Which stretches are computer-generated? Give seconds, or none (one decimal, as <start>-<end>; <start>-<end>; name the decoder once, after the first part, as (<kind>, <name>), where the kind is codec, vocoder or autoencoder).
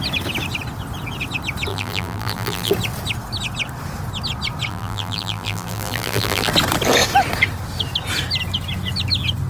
1.7-2.7 (vocoder, BigVGAN v2); 4.7-6.5